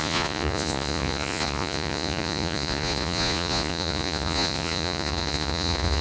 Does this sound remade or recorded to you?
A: remade